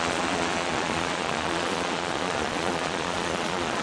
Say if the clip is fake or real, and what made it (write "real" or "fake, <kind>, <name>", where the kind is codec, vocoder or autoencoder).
fake, vocoder, Vocos